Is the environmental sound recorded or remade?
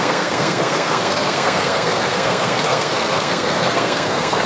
remade